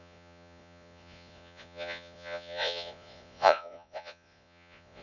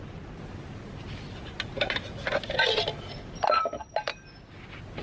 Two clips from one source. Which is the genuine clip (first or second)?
second